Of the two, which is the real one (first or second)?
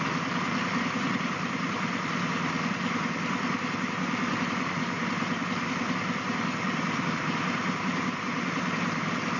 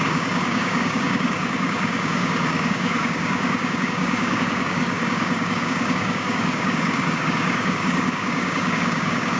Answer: first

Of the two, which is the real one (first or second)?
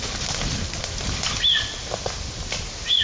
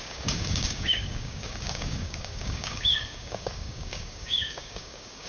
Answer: first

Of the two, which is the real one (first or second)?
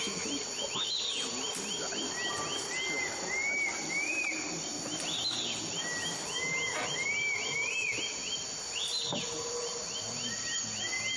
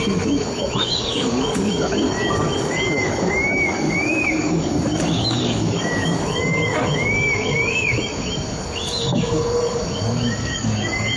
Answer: first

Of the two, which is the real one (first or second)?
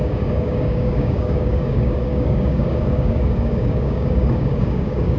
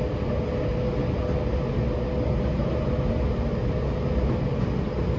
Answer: second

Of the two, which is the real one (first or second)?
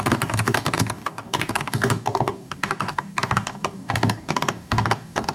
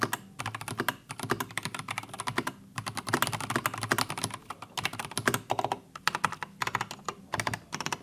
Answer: second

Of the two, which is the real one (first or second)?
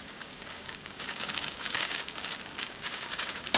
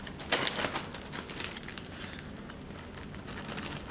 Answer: second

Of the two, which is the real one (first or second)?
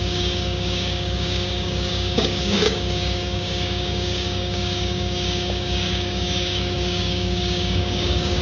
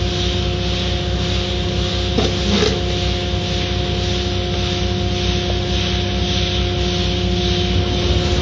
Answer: second